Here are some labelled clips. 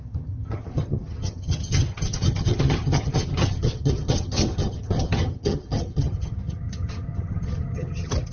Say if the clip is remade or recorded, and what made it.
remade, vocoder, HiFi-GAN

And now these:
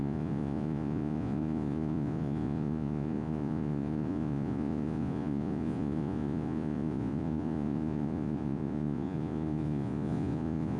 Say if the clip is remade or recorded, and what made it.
remade, vocoder, Vocos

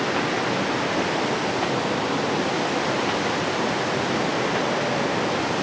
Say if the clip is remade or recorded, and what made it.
recorded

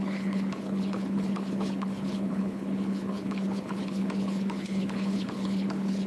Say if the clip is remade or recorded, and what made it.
remade, codec, HILCodec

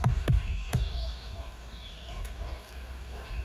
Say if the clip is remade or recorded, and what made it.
remade, codec, DAC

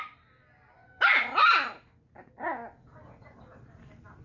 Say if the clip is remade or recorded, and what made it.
recorded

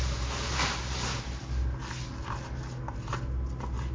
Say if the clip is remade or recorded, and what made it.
recorded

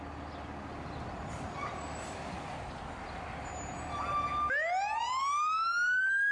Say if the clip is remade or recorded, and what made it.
recorded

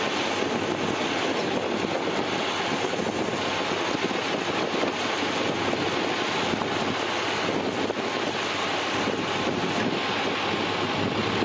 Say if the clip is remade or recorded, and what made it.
recorded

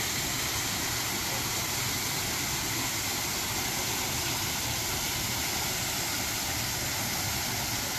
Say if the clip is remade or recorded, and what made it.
recorded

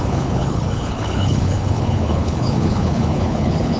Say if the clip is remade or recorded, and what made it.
remade, codec, HILCodec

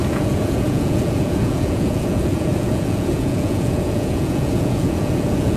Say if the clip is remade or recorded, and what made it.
remade, vocoder, Vocos